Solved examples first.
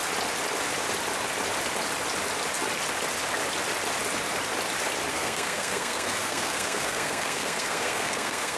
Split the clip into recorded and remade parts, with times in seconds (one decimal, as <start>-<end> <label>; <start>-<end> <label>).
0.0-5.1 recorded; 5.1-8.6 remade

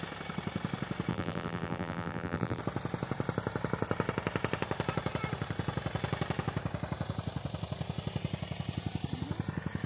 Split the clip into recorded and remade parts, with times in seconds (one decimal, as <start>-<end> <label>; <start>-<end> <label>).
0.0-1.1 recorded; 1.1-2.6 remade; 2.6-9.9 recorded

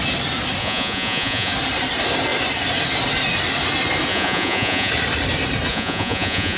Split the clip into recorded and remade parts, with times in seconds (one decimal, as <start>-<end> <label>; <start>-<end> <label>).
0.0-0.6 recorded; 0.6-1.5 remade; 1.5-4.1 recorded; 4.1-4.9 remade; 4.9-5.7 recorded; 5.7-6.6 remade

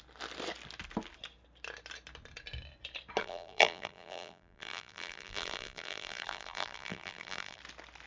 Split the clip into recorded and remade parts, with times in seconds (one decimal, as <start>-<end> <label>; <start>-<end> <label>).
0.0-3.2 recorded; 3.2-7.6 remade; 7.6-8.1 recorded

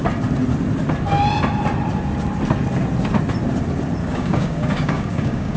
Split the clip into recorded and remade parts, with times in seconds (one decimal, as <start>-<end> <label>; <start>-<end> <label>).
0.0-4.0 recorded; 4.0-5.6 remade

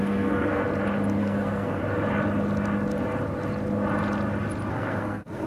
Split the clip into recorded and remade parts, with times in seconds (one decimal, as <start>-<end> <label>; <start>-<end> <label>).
0.0-0.6 remade; 0.6-1.2 recorded; 1.2-1.8 remade; 1.8-4.7 recorded; 4.7-5.5 remade

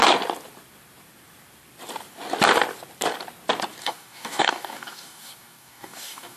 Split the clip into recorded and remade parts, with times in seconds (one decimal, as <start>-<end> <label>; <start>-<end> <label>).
0.0-3.8 recorded; 3.8-6.4 remade